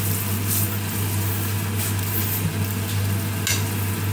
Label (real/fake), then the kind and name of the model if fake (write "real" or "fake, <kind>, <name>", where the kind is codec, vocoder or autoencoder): real